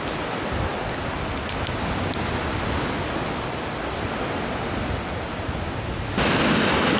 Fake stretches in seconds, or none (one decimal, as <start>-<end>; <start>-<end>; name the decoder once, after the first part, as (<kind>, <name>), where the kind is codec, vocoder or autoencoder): none